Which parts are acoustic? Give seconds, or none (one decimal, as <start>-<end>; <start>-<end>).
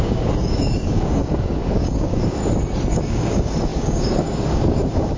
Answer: 2.4-2.9